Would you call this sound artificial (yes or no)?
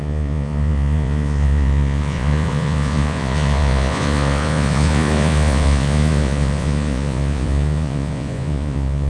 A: yes